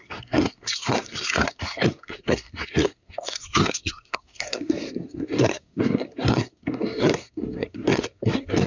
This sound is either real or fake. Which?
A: fake